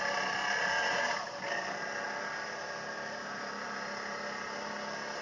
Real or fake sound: real